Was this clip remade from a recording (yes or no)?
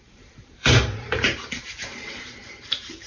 yes